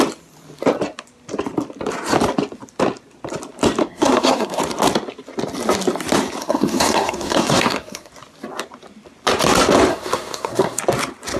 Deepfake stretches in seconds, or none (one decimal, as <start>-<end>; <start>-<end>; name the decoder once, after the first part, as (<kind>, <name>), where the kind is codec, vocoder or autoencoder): 3.8-4.6 (codec, SNAC); 6.4-8.1; 9.9-10.8